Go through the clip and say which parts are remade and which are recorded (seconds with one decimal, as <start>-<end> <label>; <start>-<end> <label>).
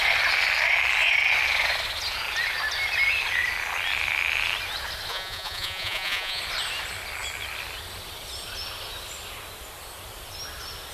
0.0-5.1 recorded; 5.1-6.4 remade; 6.4-10.9 recorded